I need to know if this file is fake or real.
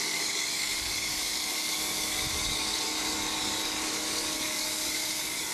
fake